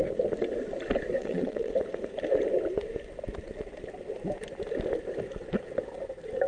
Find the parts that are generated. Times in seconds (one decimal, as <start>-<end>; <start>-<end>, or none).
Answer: 1.2-1.7